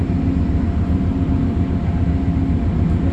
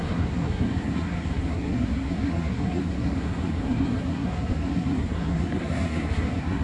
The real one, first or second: first